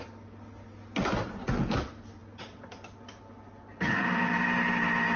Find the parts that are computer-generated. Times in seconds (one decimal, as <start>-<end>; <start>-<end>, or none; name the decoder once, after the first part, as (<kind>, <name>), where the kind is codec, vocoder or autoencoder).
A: none